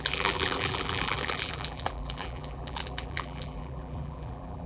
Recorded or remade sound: remade